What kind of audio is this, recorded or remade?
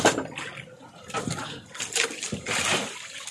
recorded